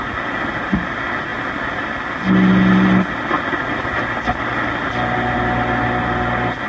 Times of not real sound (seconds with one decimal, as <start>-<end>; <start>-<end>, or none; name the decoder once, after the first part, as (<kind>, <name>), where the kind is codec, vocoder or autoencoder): none